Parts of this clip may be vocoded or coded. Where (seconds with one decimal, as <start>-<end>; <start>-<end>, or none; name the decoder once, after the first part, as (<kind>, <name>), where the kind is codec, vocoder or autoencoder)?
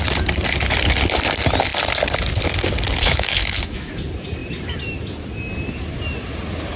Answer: 3.0-3.9 (autoencoder, DAC-VAE)